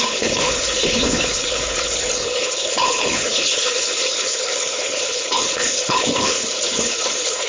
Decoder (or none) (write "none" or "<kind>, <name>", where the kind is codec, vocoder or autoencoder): codec, HILCodec